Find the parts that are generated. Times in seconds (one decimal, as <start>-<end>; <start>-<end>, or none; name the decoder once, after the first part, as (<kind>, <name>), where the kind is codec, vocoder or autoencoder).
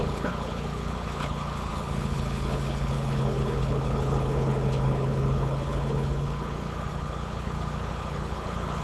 0.0-8.8 (codec, HILCodec)